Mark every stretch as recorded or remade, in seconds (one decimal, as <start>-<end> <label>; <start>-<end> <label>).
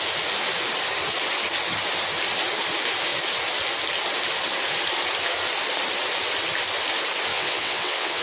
0.0-7.3 recorded; 7.3-8.2 remade